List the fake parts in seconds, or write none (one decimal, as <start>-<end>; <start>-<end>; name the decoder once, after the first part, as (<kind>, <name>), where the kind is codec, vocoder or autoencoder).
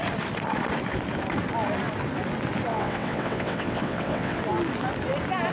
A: 2.7-4.4 (vocoder, WaveNeXt)